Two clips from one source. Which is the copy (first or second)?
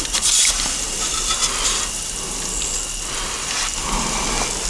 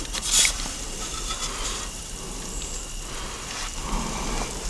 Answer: second